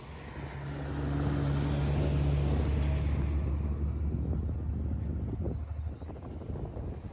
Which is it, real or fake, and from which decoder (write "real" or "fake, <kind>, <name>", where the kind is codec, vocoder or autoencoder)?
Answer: real